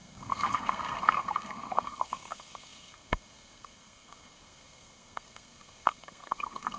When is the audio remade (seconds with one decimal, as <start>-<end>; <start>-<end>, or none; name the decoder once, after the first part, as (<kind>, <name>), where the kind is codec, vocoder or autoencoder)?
0.0-6.8 (codec, SNAC)